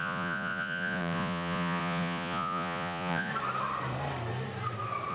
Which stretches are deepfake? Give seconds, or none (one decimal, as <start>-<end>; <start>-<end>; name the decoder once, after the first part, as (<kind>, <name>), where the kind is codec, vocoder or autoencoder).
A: 0.0-3.3 (vocoder, Vocos)